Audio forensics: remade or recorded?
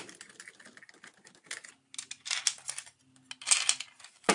recorded